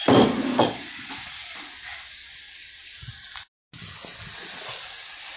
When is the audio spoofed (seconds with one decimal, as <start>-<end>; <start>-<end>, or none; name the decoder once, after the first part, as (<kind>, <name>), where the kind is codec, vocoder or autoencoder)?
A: 0.5-1.1 (vocoder, Vocos)